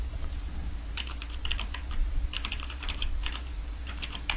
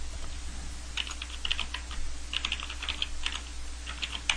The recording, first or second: second